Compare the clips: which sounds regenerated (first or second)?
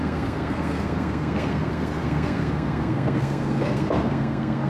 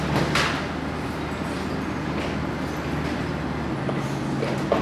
first